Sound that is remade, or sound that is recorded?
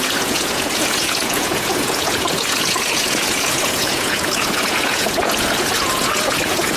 remade